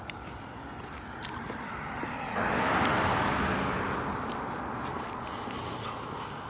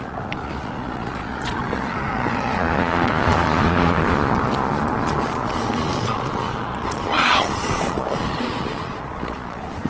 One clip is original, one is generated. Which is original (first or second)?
first